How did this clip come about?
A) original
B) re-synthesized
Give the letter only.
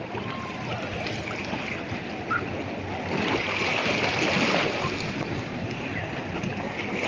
A